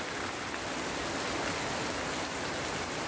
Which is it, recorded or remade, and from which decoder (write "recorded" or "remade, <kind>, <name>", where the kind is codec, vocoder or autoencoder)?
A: recorded